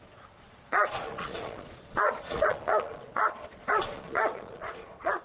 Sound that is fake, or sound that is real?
fake